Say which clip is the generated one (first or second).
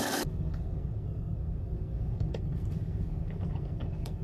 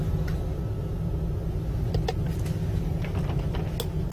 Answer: first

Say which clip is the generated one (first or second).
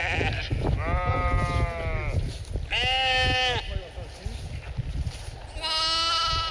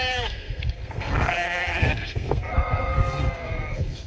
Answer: second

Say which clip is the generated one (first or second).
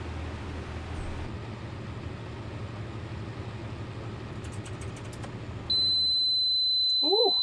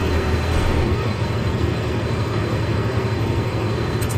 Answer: second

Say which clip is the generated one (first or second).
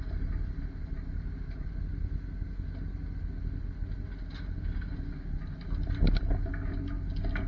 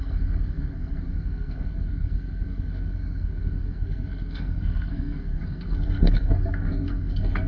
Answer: second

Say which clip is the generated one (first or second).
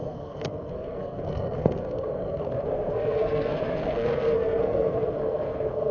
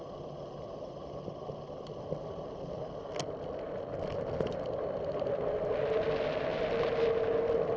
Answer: first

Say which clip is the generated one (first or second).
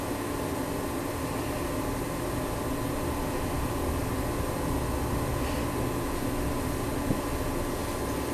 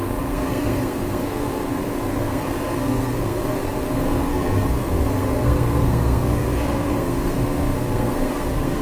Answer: second